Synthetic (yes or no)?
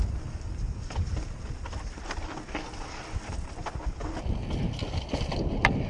no